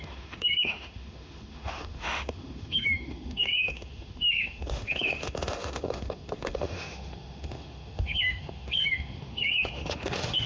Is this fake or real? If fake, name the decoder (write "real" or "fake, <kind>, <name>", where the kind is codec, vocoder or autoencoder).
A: fake, autoencoder, DAC-VAE